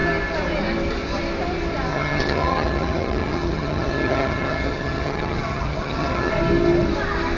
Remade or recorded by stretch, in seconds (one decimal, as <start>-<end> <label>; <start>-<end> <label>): 0.0-1.9 recorded; 1.9-6.3 remade; 6.3-7.4 recorded